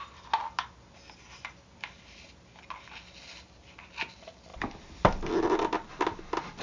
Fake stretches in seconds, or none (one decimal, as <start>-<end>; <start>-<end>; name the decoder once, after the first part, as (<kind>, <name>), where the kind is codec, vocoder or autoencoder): none